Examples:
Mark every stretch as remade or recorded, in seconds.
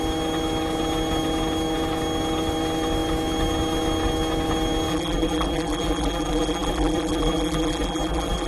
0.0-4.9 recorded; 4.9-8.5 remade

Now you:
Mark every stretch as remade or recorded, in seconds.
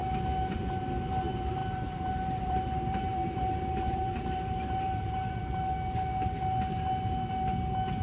0.0-1.6 recorded; 1.6-5.4 remade; 5.4-8.0 recorded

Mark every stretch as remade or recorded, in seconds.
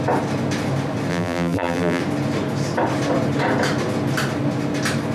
0.0-1.1 recorded; 1.1-2.0 remade; 2.0-5.1 recorded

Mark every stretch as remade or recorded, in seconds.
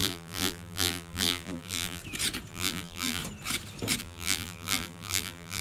0.0-2.0 remade; 2.0-2.5 recorded; 2.5-3.2 remade; 3.2-4.0 recorded; 4.0-5.6 remade